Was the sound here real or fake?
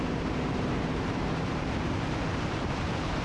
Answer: fake